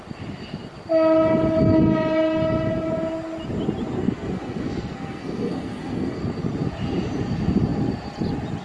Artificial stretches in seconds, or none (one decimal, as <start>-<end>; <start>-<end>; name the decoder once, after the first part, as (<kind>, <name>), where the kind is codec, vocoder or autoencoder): 4.0-6.2 (codec, SNAC)